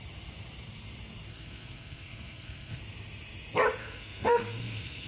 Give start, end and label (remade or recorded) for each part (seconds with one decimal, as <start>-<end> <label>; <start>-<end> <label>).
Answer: 0.0-1.3 recorded; 1.3-2.8 remade; 2.8-3.8 recorded; 3.8-5.1 remade